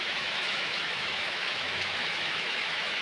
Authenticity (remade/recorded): remade